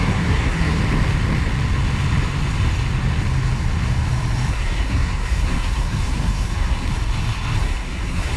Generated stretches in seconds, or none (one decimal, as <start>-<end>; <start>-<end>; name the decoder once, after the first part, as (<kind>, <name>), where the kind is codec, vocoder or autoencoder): 0.0-0.8 (codec, SNAC); 4.5-6.9; 7.6-8.4